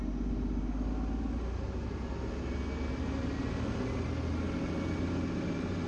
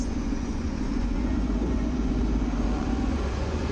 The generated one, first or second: second